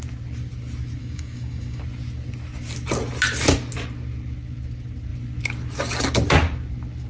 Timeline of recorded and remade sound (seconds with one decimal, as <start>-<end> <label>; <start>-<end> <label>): 0.0-1.0 recorded; 1.0-1.8 remade; 1.8-7.1 recorded